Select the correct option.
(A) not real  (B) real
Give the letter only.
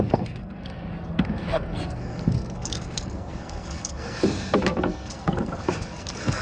A